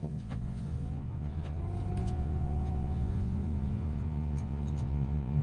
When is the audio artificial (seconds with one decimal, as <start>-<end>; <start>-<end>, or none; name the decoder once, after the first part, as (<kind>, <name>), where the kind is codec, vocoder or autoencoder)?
0.0-1.6 (vocoder, Vocos); 2.0-5.4